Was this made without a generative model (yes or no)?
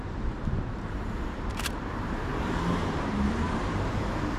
no